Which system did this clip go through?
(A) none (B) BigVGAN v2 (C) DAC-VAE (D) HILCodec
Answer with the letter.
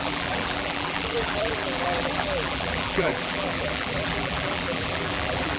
B